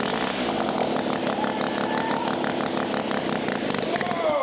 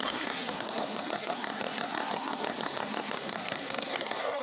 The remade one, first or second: second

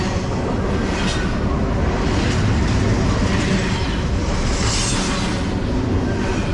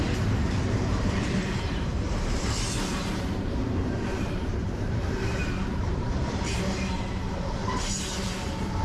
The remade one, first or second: second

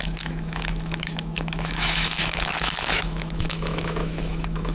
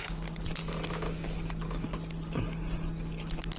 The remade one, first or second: first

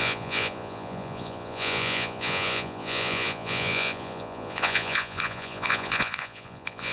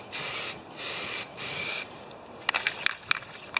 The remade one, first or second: first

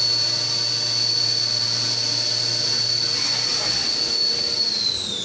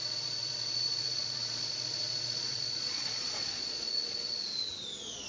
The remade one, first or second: second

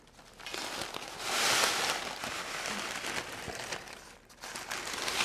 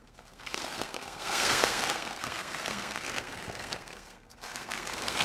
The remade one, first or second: second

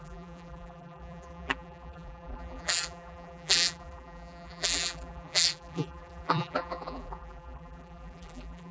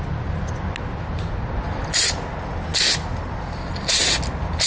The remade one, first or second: first